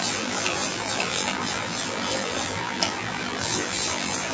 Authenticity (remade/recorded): remade